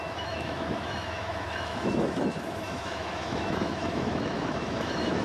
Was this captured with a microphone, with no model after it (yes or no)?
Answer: no